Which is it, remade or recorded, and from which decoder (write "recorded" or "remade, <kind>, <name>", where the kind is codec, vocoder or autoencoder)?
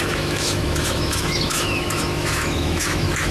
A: remade, autoencoder, DAC-VAE